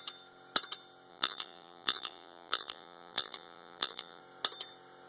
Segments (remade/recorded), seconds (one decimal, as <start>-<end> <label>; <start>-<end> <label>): 0.0-1.1 recorded; 1.1-4.2 remade; 4.2-5.1 recorded